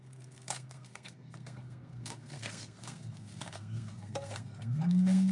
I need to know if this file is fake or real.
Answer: fake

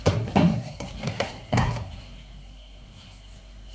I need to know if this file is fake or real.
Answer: fake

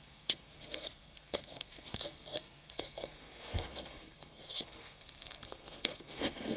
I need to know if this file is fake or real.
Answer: fake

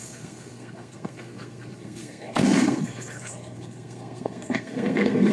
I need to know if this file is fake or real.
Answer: fake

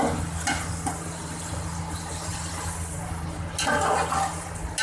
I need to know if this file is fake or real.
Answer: real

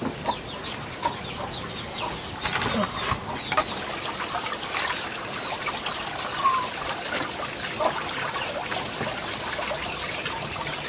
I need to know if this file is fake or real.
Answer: real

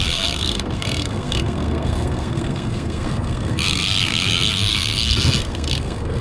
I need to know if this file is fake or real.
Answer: fake